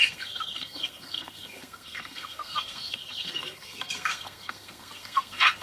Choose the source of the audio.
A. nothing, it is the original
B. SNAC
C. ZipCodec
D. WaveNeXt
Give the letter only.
B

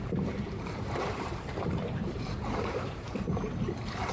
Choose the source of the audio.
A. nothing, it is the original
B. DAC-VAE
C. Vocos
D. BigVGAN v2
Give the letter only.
D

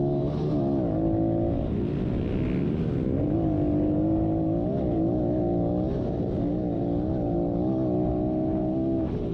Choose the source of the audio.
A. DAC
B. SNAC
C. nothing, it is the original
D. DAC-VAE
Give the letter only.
C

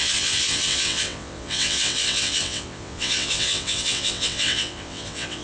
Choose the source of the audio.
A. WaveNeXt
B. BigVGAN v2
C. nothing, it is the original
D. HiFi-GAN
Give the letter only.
A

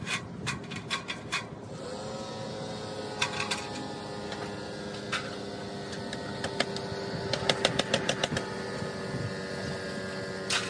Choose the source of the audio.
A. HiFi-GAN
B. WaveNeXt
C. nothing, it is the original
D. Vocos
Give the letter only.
C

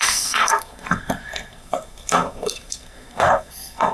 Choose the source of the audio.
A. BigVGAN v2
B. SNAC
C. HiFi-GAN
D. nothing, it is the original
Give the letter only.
B